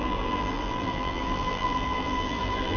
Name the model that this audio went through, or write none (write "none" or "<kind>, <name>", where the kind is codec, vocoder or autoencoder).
vocoder, BigVGAN v2